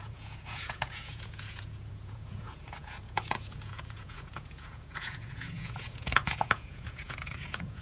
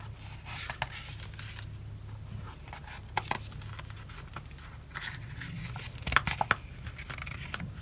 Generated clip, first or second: first